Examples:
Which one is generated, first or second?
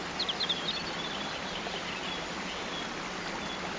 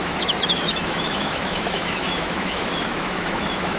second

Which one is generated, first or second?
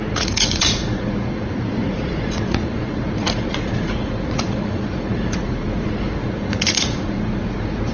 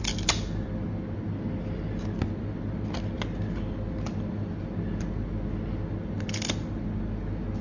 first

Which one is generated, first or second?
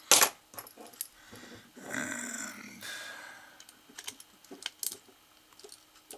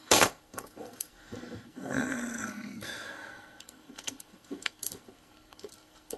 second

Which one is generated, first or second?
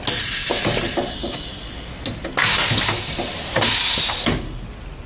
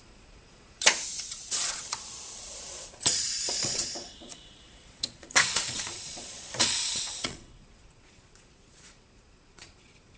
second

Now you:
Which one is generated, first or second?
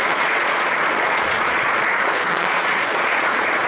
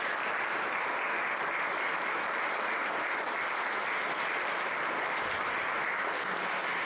first